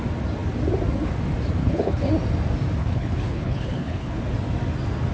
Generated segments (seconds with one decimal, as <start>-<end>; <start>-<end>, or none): 1.6-2.1; 2.8-4.2